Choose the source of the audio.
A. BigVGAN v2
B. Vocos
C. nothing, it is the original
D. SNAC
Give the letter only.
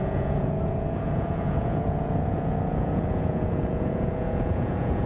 B